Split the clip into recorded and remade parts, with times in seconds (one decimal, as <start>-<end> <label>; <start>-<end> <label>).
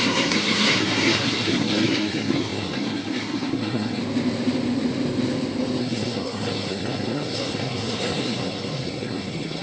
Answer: 0.0-4.0 remade; 4.0-5.8 recorded; 5.8-9.6 remade